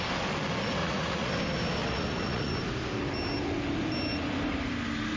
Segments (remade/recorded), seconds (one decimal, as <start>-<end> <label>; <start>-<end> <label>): 0.0-0.8 recorded; 0.8-1.3 remade; 1.3-1.8 recorded; 1.8-2.5 remade; 2.5-5.2 recorded